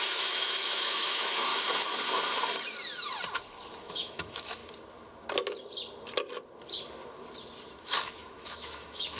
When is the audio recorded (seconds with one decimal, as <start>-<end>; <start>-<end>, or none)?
1.5-3.8; 4.6-7.8